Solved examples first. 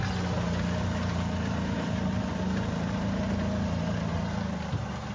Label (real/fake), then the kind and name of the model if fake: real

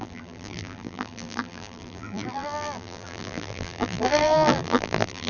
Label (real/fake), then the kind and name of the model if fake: fake, vocoder, BigVGAN v2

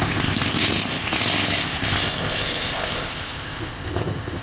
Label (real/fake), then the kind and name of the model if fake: fake, codec, ZipCodec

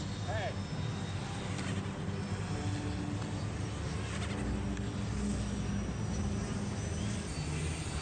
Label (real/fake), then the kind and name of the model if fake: real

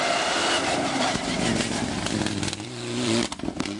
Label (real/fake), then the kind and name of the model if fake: fake, vocoder, BigVGAN v2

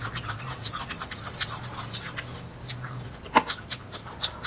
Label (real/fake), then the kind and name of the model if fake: real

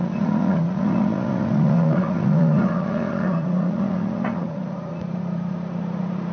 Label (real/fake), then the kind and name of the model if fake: fake, vocoder, Vocos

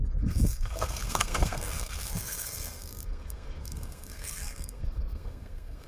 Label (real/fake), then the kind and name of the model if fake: fake, codec, SNAC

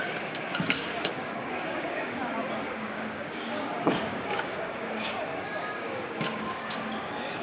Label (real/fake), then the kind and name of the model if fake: fake, codec, DAC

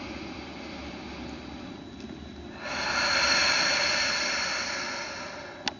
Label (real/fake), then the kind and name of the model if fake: real